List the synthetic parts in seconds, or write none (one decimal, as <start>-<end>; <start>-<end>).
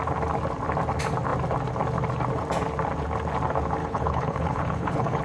3.8-5.2